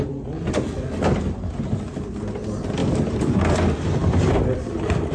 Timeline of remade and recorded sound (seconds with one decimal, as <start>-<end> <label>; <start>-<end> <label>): 0.0-2.8 recorded; 2.8-3.3 remade; 3.3-4.0 recorded; 4.0-5.1 remade

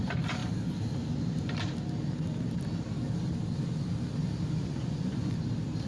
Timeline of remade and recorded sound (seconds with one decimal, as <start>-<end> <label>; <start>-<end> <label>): 0.0-4.6 recorded; 4.6-5.3 remade; 5.3-5.9 recorded

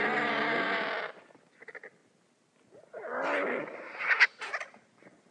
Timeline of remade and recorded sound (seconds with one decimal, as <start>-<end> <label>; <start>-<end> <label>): 0.0-5.3 recorded

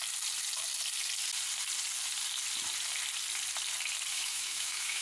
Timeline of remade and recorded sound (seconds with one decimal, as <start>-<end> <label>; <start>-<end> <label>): 0.0-4.1 recorded; 4.1-5.0 remade

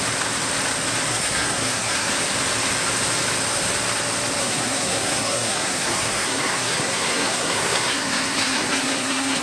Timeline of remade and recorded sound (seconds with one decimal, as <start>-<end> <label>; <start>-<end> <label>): 0.0-1.1 recorded; 1.1-2.1 remade; 2.1-4.4 recorded; 4.4-9.4 remade

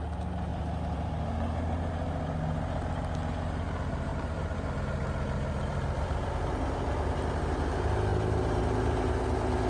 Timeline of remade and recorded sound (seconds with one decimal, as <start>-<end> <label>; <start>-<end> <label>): 0.0-0.5 recorded; 0.5-1.1 remade; 1.1-4.1 recorded; 4.1-4.8 remade; 4.8-5.7 recorded; 5.7-6.5 remade; 6.5-9.7 recorded